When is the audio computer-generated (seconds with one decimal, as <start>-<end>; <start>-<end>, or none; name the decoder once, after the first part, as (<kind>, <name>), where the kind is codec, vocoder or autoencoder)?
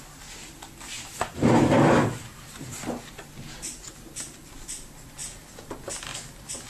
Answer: none